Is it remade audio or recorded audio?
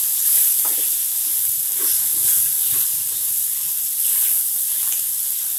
recorded